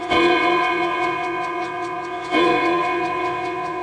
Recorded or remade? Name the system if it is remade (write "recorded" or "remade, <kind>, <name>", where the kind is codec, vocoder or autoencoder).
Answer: remade, vocoder, WaveNeXt